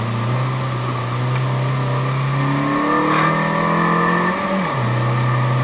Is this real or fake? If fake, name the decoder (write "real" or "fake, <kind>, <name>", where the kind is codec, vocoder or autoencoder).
real